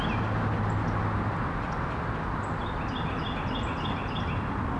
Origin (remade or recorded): recorded